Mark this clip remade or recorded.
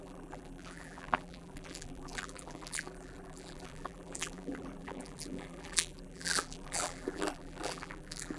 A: remade